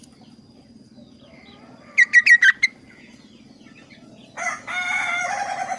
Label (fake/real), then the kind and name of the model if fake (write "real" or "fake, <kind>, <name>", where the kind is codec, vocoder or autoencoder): real